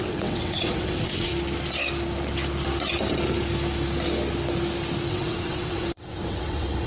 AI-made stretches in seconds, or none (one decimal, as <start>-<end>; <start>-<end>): 0.0-1.3; 5.1-6.9